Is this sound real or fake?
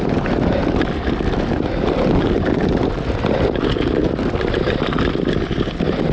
real